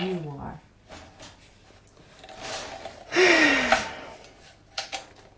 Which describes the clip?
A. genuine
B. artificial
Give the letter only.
A